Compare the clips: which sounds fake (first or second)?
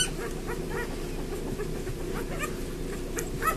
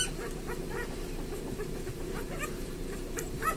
second